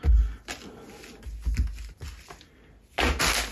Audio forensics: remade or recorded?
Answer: recorded